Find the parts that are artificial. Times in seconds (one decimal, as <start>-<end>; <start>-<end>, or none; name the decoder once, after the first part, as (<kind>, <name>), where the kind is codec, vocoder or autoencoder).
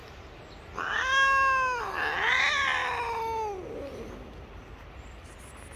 none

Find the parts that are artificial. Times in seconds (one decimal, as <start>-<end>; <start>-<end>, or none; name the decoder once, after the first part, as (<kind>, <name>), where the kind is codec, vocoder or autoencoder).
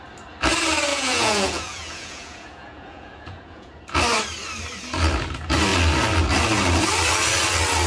0.9-3.8 (vocoder, Vocos)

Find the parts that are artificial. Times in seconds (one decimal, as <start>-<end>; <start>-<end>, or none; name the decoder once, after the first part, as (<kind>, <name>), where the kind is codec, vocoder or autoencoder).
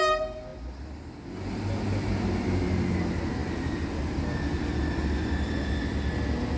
none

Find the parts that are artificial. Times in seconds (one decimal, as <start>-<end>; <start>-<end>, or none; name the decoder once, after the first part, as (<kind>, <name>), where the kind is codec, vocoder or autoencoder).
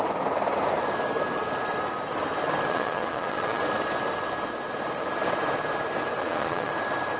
2.7-3.6 (vocoder, Vocos); 6.2-6.7